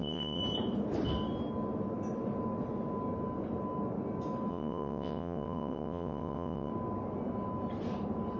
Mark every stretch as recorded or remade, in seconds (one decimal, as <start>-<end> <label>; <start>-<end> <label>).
0.0-0.4 remade; 0.4-4.5 recorded; 4.5-6.7 remade; 6.7-8.4 recorded

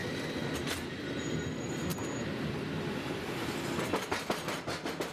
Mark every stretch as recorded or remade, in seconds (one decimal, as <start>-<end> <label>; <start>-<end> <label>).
0.0-5.1 recorded